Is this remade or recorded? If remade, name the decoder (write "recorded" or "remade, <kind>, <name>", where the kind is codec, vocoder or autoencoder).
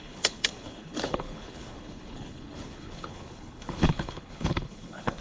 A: remade, codec, HILCodec